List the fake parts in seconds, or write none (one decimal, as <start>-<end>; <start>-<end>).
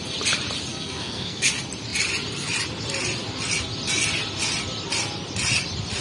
0.7-1.5